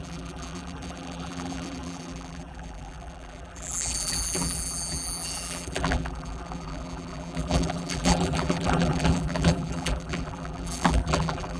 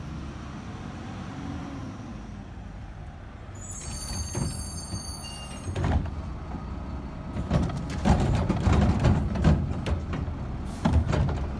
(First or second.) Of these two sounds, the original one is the second